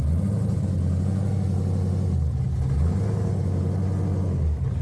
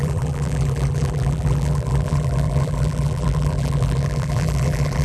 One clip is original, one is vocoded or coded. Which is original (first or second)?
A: first